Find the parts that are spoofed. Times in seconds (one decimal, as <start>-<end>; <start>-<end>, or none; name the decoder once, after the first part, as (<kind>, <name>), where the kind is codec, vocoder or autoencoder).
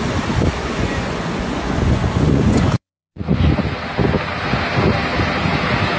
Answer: 0.6-3.4 (vocoder, Vocos)